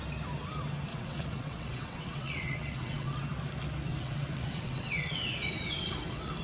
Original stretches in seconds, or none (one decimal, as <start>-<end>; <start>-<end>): 0.0-0.9; 3.2-3.9